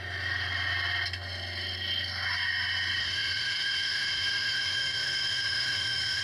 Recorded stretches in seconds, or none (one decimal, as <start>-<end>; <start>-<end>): 0.0-3.0